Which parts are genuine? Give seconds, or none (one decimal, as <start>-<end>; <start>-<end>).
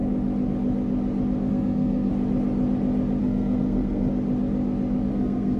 0.0-1.5; 2.1-3.2; 4.1-5.1